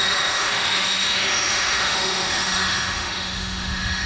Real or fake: fake